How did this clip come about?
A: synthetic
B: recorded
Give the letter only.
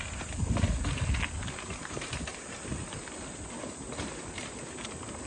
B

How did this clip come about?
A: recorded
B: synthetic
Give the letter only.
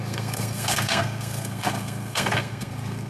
B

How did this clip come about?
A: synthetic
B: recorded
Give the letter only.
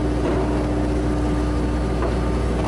B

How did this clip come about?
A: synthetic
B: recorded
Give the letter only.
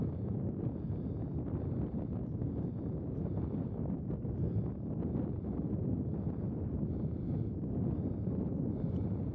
B